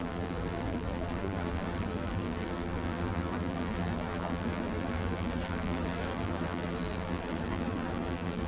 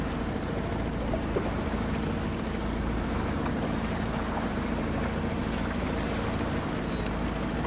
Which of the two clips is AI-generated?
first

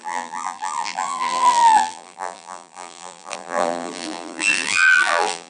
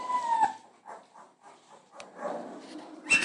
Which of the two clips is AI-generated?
first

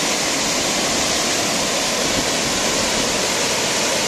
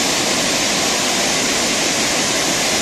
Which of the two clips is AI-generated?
second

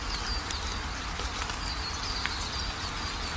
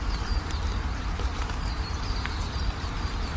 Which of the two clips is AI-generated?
second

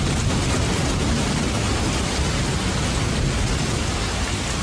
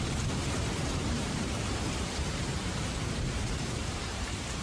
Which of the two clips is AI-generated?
second